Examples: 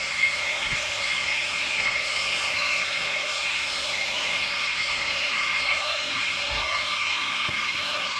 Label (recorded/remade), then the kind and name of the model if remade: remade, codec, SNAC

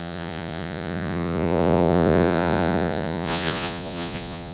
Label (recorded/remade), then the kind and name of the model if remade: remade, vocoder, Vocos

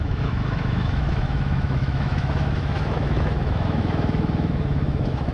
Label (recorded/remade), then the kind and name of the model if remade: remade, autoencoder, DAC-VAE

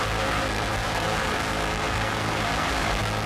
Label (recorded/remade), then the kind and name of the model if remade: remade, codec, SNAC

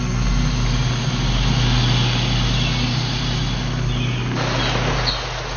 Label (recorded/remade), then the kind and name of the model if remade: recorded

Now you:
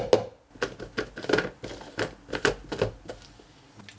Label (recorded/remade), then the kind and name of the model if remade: recorded